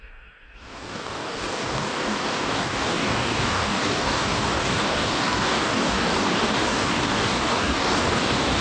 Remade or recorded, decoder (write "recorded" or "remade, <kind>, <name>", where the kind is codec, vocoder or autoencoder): remade, codec, DAC